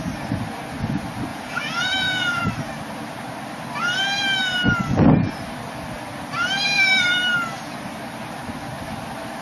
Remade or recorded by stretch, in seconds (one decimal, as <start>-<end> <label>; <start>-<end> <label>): 0.0-1.3 recorded; 1.3-2.4 remade; 2.4-9.4 recorded